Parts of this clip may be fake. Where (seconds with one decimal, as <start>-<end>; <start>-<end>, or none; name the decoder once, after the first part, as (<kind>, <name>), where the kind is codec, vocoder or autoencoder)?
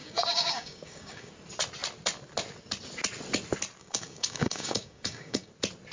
0.0-1.3 (codec, DAC); 3.8-5.5